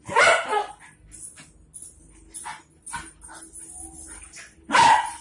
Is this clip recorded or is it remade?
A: recorded